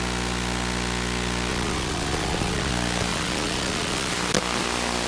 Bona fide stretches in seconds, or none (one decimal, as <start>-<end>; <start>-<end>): 0.0-1.5; 2.7-3.1; 4.1-5.1